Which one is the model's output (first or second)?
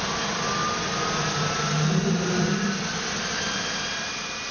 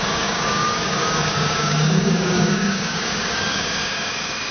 second